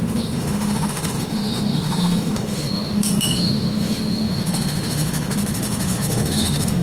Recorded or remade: remade